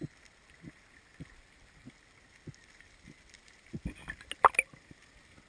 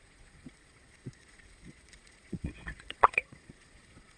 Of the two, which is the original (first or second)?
first